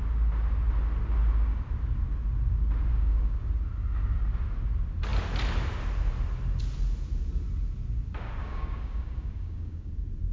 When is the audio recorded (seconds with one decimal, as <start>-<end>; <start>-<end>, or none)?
0.0-2.9; 3.5-8.4; 9.9-10.3